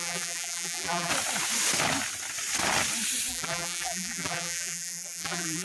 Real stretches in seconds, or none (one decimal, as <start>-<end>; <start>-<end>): 1.1-3.3